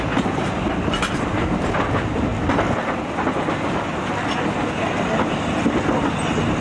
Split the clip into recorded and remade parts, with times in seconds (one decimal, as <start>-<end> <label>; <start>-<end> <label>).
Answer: 0.0-6.6 recorded